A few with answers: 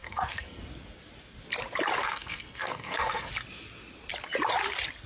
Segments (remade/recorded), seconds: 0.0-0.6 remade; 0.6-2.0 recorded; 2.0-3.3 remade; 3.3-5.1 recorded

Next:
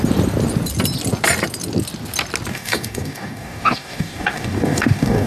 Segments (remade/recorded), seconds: 0.0-2.5 recorded; 2.5-5.3 remade

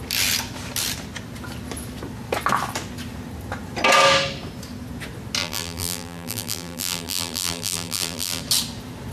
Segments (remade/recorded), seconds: 0.0-5.4 recorded; 5.4-8.4 remade; 8.4-9.1 recorded

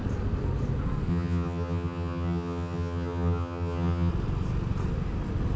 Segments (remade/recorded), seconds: 0.0-1.1 recorded; 1.1-4.1 remade; 4.1-5.6 recorded

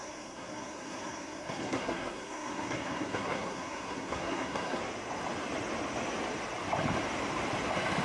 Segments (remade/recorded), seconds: 0.0-4.8 remade; 4.8-8.0 recorded

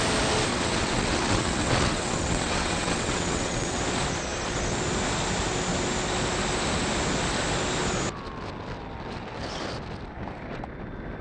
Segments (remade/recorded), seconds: 0.0-0.5 recorded; 0.5-3.8 remade; 3.8-11.2 recorded

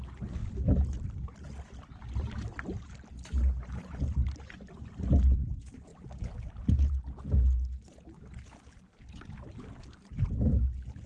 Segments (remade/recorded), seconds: 0.0-11.1 recorded